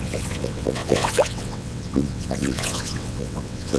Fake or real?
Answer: fake